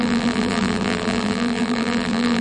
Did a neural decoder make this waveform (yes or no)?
yes